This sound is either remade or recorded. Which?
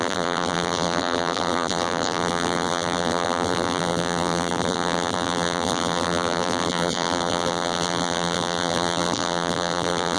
remade